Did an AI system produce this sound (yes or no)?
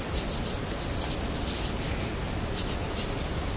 no